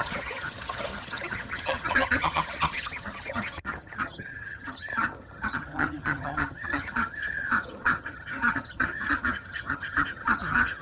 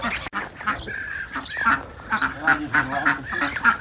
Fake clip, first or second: first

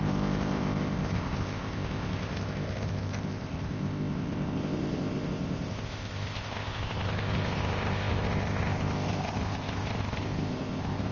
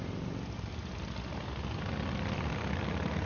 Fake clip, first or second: first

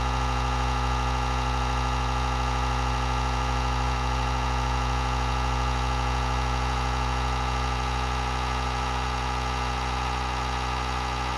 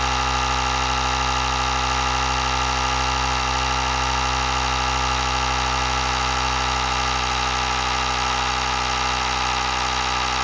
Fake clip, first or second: first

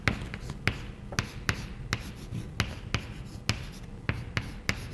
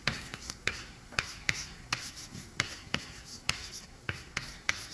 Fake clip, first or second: second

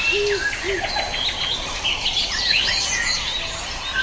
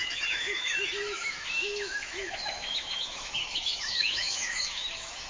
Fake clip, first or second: second